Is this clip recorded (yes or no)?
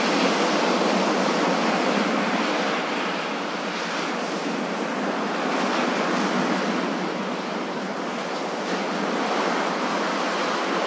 yes